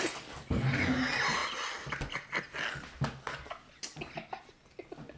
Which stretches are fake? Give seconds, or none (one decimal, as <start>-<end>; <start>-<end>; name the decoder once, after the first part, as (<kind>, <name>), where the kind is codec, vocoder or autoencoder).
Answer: none